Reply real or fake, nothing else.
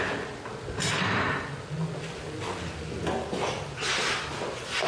real